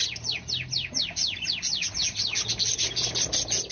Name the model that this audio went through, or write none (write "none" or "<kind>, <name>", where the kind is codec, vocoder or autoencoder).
none